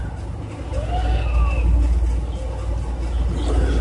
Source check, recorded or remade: recorded